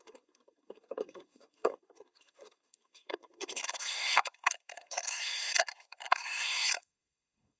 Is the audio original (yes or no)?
no